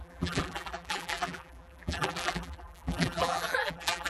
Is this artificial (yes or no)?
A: yes